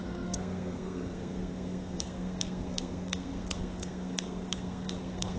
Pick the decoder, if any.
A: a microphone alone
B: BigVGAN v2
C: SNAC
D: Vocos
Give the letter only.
C